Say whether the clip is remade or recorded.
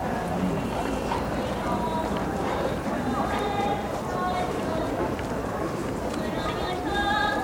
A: remade